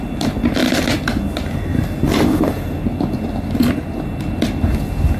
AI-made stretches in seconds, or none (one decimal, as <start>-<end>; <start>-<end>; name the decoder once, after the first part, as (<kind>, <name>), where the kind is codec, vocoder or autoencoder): none